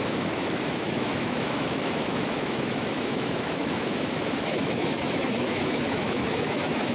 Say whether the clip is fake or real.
fake